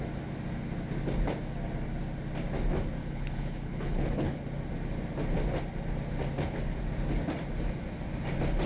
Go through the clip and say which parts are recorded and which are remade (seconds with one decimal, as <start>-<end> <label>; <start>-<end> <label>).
0.0-3.0 recorded; 3.0-4.4 remade; 4.4-8.7 recorded